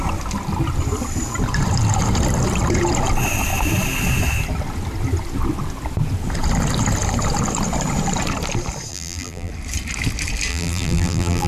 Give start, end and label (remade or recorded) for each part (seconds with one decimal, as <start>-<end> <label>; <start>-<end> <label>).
0.0-8.9 recorded; 8.9-9.5 remade; 9.5-10.5 recorded; 10.5-11.5 remade